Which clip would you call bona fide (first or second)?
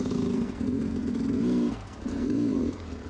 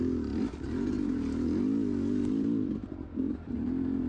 second